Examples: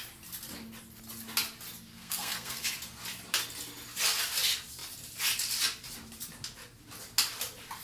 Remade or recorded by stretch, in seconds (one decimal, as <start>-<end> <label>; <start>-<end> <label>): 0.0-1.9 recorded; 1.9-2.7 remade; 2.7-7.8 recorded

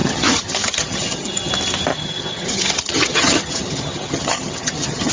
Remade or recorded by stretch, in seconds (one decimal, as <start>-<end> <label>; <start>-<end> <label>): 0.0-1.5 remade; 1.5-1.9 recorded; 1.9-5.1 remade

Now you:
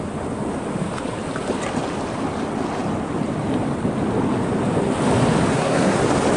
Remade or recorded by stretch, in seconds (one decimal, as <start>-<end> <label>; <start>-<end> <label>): 0.0-5.5 recorded; 5.5-6.0 remade; 6.0-6.4 recorded

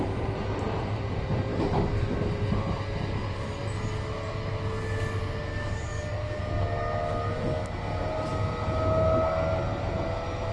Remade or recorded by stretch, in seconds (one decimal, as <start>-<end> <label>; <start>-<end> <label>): 0.0-1.5 recorded; 1.5-2.2 remade; 2.2-5.5 recorded; 5.5-6.4 remade; 6.4-10.5 recorded

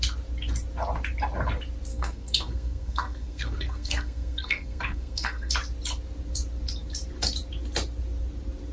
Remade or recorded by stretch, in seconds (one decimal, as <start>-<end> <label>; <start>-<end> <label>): 0.0-1.9 recorded; 1.9-5.5 remade; 5.5-8.7 recorded